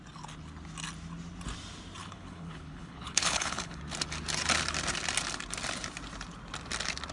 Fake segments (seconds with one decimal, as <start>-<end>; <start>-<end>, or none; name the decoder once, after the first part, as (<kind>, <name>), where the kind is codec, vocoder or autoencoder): 2.0-3.8 (codec, HILCodec)